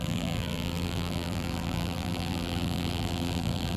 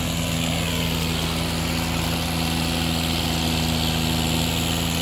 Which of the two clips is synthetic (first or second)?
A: first